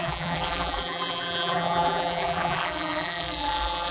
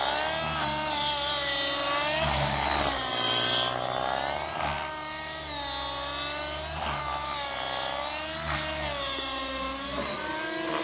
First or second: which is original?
second